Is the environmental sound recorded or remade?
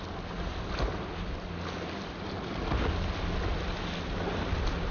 recorded